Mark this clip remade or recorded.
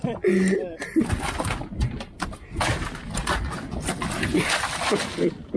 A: recorded